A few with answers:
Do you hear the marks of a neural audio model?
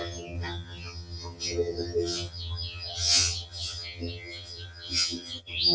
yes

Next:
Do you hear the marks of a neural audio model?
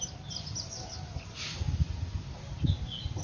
no